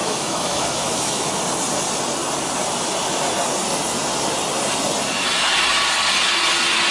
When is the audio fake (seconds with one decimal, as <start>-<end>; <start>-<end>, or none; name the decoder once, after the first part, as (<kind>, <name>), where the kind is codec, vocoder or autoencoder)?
0.0-1.4 (autoencoder, DAC-VAE)